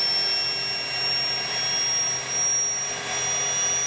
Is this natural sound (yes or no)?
yes